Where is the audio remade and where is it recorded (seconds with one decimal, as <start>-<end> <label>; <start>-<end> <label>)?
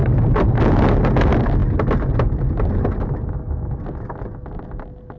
0.0-5.2 recorded